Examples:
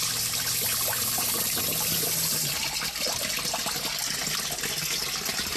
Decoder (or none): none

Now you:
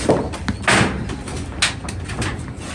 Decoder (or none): none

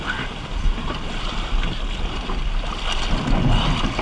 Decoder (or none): none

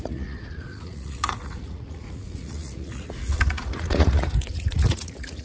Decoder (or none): vocoder, Vocos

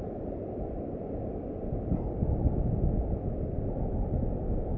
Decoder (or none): none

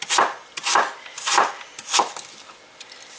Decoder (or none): vocoder, BigVGAN v2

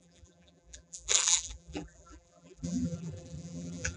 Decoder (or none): vocoder, BigVGAN v2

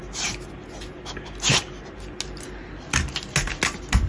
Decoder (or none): none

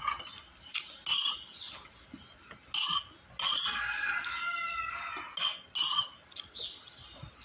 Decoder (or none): none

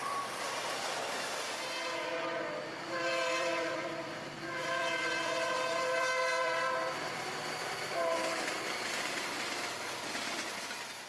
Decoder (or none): vocoder, BigVGAN v2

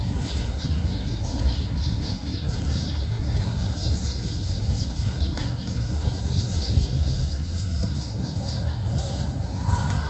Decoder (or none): codec, SNAC